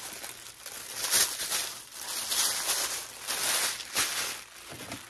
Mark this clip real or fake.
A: real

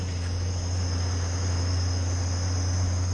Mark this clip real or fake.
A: real